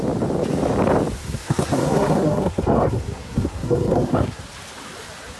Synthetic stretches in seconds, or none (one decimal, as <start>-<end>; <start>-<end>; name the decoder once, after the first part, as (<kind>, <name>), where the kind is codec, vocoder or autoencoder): 1.2-4.4 (codec, SNAC)